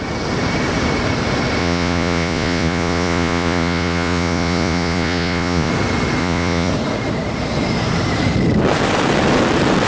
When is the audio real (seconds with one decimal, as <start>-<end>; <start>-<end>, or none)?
0.0-1.6; 5.7-6.2; 6.7-9.9